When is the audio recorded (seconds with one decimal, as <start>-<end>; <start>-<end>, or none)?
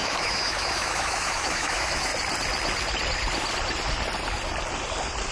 2.1-5.3